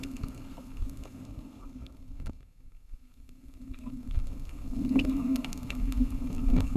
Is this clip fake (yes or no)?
yes